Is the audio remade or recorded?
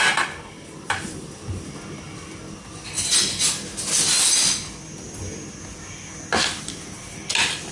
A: recorded